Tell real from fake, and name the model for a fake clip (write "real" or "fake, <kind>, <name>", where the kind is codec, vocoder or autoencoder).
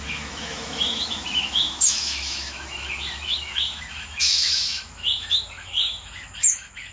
fake, autoencoder, DAC-VAE